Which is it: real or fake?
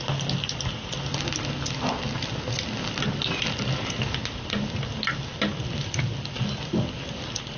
real